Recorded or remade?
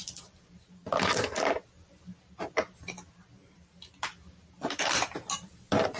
recorded